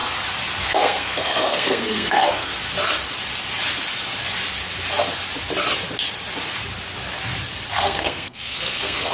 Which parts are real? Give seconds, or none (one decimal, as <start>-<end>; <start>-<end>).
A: 0.0-0.6; 2.5-7.7